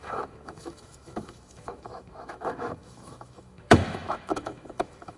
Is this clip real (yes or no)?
no